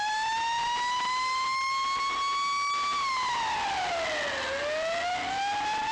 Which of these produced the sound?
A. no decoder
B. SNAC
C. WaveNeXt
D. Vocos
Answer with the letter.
A